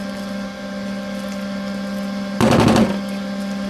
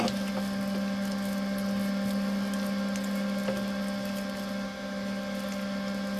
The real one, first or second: second